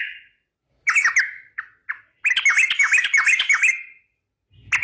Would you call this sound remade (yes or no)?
no